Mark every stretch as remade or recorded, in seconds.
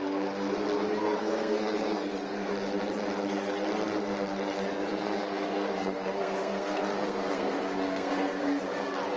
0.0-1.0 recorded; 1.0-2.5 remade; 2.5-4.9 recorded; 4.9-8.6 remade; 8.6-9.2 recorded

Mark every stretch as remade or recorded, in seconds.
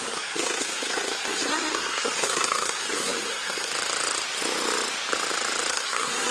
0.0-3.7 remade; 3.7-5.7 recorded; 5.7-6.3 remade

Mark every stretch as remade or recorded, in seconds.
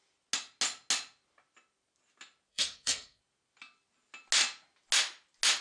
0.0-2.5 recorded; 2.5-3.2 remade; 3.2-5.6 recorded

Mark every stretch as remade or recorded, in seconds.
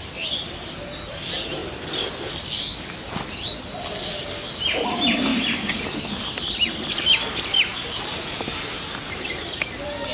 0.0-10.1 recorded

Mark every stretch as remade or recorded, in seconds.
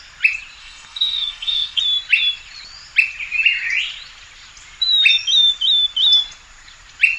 0.0-0.6 recorded; 0.6-1.8 remade; 1.8-7.2 recorded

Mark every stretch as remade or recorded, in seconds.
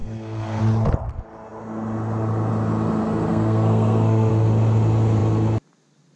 0.0-0.6 remade; 0.6-3.3 recorded; 3.3-4.3 remade; 4.3-6.2 recorded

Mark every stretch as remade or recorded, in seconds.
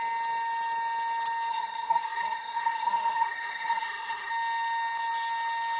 0.0-1.5 recorded; 1.5-4.3 remade; 4.3-5.8 recorded